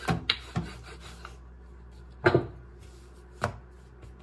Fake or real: real